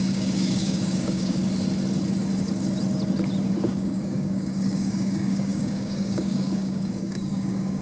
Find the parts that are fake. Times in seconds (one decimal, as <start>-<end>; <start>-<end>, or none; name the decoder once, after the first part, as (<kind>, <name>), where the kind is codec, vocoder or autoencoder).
0.0-1.4 (codec, DAC); 3.6-7.8